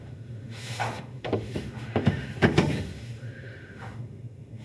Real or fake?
fake